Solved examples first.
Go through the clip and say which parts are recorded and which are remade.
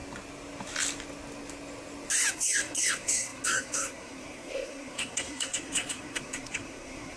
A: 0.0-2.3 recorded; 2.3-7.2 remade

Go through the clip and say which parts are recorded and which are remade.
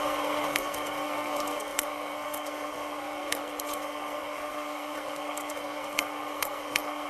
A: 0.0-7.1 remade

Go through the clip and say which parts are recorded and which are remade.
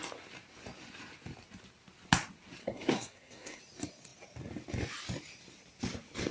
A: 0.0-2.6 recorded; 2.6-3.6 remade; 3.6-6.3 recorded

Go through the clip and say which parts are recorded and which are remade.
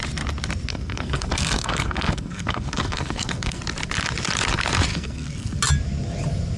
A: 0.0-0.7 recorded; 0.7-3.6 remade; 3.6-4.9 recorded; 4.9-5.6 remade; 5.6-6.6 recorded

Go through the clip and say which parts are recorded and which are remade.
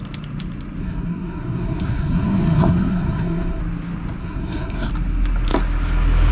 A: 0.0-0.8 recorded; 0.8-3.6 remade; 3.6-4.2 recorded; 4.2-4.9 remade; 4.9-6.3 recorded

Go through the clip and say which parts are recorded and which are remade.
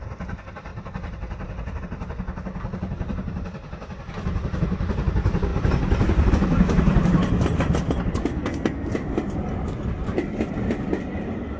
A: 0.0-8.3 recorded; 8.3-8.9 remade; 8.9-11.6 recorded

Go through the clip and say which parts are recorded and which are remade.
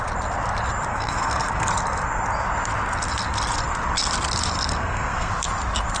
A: 0.0-0.9 recorded; 0.9-1.7 remade; 1.7-4.7 recorded; 4.7-5.3 remade; 5.3-6.0 recorded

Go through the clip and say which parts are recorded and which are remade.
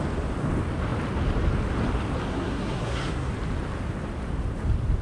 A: 0.0-2.3 recorded; 2.3-3.3 remade; 3.3-5.0 recorded